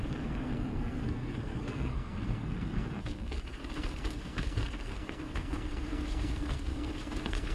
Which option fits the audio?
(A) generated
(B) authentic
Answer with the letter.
A